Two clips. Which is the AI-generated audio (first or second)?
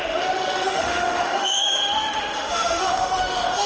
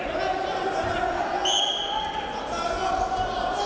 first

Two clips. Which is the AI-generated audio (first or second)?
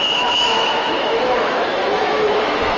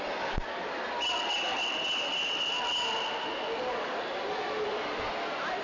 first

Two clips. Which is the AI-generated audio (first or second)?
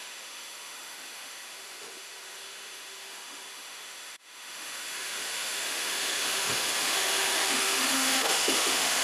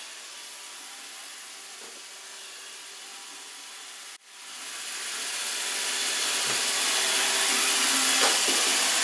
first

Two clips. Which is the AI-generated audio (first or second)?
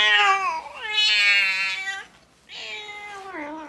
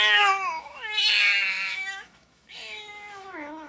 second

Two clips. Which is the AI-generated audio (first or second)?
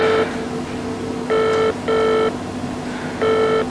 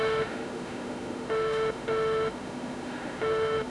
second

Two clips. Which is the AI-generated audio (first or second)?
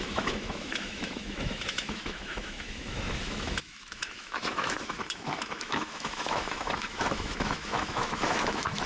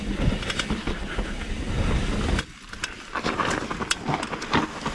first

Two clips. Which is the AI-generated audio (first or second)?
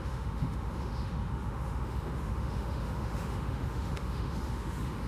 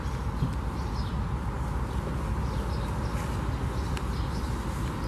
first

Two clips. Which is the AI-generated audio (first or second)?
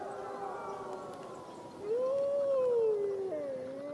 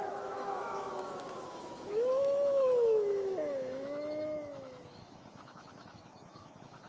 second